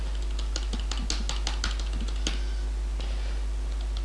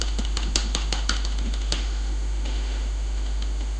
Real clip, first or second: first